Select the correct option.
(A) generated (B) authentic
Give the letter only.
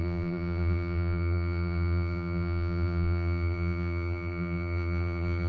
A